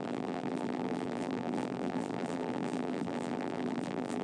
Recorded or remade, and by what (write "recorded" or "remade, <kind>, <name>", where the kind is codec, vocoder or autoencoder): remade, vocoder, BigVGAN v2